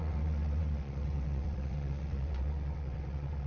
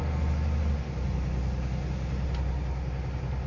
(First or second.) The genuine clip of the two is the second